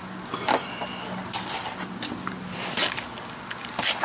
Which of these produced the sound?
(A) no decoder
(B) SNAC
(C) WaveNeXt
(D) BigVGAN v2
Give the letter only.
A